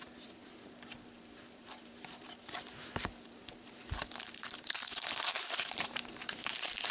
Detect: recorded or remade remade